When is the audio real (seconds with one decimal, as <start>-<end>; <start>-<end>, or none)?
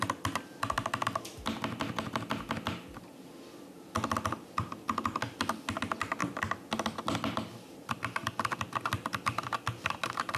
0.0-10.4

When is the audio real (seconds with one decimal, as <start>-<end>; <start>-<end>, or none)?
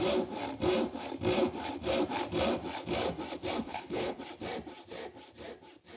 0.0-3.6; 4.2-6.0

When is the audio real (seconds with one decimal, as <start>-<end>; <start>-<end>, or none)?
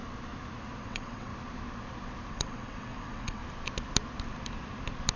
0.0-0.8; 1.3-2.3; 3.4-5.2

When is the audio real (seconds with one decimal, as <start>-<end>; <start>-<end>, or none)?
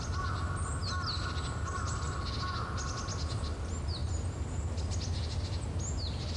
0.0-6.4